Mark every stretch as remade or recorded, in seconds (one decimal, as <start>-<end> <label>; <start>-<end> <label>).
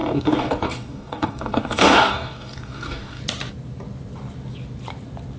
0.0-3.2 remade; 3.2-5.4 recorded